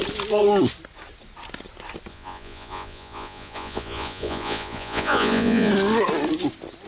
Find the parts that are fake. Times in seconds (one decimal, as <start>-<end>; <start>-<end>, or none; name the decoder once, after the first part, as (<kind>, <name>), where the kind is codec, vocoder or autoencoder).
2.1-5.7 (vocoder, Vocos)